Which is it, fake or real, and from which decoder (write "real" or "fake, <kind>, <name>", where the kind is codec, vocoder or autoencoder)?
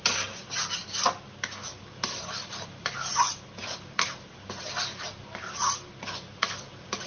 real